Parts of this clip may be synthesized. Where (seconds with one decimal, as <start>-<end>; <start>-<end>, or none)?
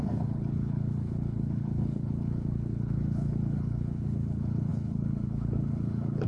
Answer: 0.0-6.3